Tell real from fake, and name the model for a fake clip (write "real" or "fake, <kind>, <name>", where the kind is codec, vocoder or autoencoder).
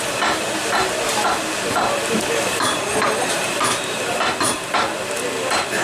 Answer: real